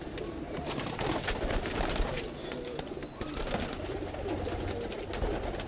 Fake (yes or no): no